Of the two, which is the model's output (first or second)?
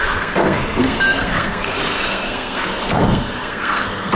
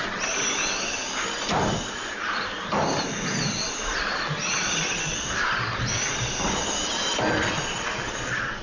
first